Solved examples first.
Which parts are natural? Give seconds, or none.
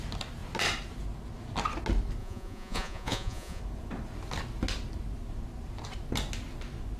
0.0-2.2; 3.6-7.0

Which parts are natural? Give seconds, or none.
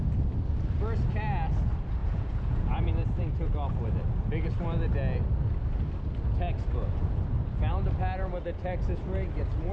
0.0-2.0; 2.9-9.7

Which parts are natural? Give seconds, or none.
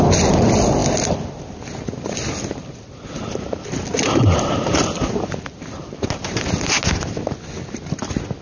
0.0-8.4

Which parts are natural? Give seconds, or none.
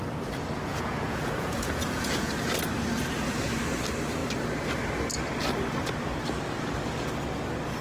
0.0-0.7; 2.3-7.8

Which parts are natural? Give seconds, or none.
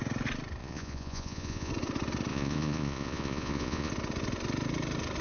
0.0-0.6; 1.7-2.3; 3.9-5.2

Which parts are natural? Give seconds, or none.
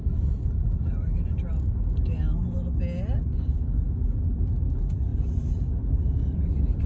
0.0-6.9